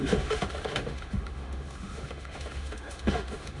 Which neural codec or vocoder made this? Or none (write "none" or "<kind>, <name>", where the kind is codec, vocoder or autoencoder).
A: autoencoder, DAC-VAE